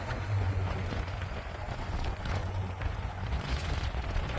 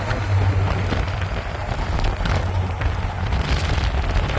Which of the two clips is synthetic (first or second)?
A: first